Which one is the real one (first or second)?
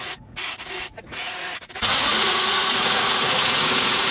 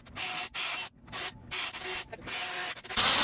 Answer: second